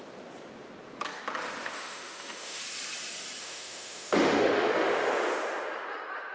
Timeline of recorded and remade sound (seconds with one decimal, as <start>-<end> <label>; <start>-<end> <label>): 0.0-1.6 recorded; 1.6-2.6 remade; 2.6-3.4 recorded; 3.4-5.1 remade; 5.1-6.3 recorded